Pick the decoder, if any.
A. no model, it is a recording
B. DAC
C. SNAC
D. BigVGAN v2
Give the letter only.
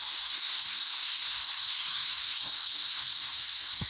C